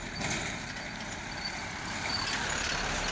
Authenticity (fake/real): real